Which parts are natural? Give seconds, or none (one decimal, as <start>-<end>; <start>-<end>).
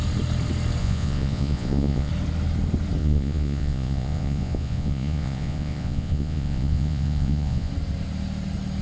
0.0-0.8; 2.1-3.0; 7.7-8.8